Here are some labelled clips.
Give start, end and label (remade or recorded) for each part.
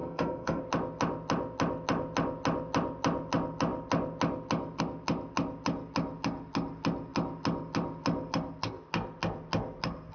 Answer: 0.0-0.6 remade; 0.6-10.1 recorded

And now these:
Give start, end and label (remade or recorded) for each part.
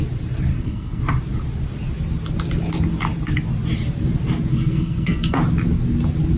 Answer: 0.0-0.5 recorded; 0.5-1.0 remade; 1.0-4.5 recorded; 4.5-5.4 remade; 5.4-6.4 recorded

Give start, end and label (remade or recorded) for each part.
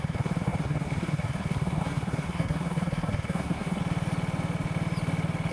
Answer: 0.0-3.8 remade; 3.8-5.5 recorded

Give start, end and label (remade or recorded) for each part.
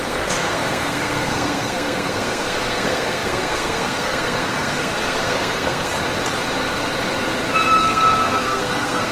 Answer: 0.0-5.9 remade; 5.9-7.8 recorded; 7.8-9.1 remade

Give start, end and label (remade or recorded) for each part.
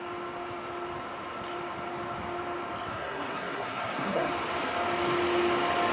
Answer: 0.0-2.9 recorded; 2.9-4.3 remade; 4.3-5.9 recorded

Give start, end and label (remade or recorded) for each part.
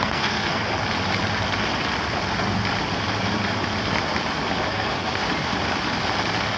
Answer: 0.0-0.7 remade; 0.7-4.7 recorded; 4.7-5.2 remade; 5.2-6.6 recorded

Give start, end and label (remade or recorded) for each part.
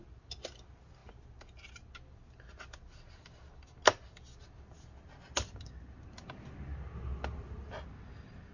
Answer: 0.0-8.5 recorded